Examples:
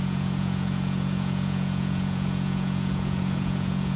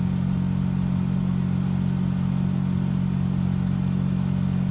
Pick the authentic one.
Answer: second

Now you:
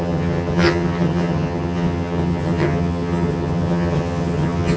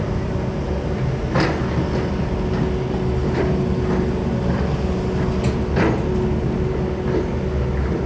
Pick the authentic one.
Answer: second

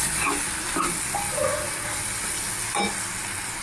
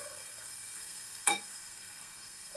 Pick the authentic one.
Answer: first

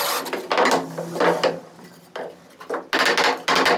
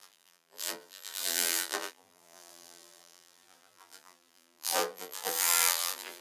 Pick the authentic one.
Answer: first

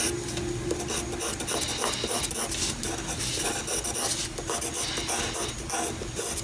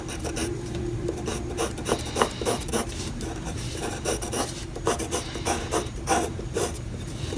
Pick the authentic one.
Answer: first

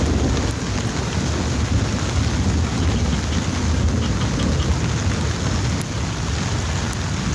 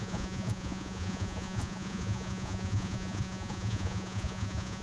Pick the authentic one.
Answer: first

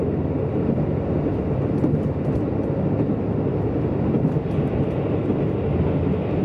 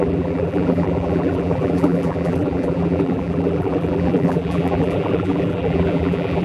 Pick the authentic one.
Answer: first